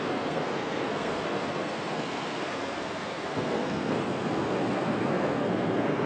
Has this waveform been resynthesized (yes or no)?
yes